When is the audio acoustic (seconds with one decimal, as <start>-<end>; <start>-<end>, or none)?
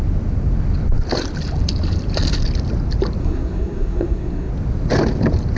0.0-3.2; 4.5-5.6